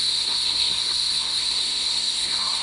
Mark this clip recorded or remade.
remade